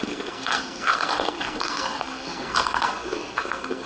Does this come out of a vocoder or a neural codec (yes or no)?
yes